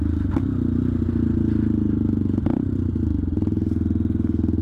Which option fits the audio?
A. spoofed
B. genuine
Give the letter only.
B